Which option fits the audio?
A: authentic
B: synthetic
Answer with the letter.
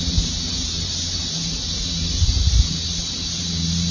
B